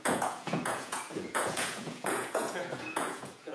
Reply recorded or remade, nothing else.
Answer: remade